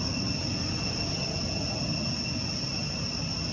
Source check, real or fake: real